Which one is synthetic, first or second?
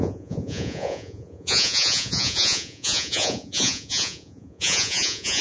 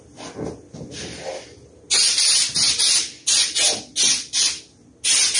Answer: first